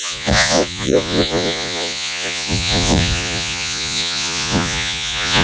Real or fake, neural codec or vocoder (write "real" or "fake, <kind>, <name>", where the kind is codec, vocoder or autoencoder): fake, vocoder, Vocos